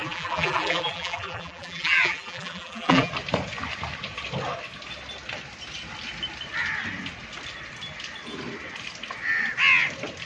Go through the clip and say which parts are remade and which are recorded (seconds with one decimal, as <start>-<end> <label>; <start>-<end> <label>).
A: 0.0-3.1 remade; 3.1-10.3 recorded